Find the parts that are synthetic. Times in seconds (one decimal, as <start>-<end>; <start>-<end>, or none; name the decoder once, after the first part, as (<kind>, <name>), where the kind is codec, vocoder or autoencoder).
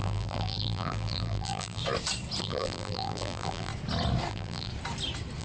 0.0-1.8 (vocoder, BigVGAN v2); 2.4-3.7; 4.3-4.7